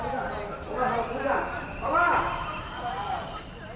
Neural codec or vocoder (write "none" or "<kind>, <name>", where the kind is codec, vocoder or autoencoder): none